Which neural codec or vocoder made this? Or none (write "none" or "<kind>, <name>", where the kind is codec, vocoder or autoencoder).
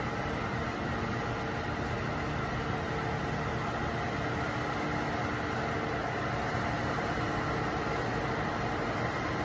none